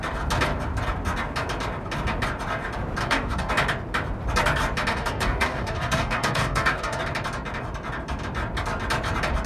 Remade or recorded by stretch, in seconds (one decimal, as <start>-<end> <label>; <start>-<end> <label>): 0.0-3.0 recorded; 3.0-3.5 remade; 3.5-4.9 recorded; 4.9-7.0 remade; 7.0-9.5 recorded